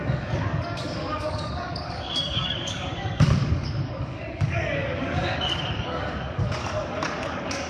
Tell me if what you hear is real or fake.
fake